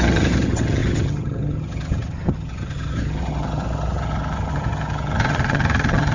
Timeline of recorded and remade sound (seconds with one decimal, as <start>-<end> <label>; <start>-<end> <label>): 0.0-6.1 remade